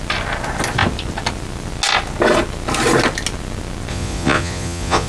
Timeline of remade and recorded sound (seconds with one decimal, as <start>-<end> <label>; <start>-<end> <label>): 0.0-3.9 recorded; 3.9-5.1 remade